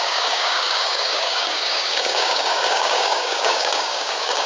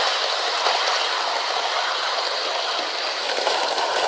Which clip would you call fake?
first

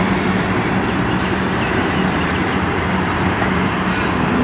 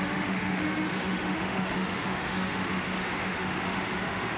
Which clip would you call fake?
second